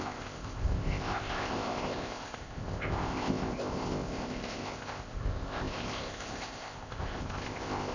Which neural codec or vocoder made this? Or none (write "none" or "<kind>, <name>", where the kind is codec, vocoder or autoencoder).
codec, ZipCodec